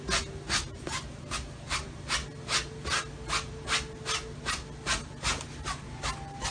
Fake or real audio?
real